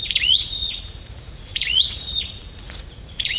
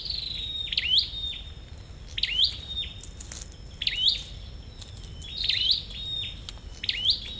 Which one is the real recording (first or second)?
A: second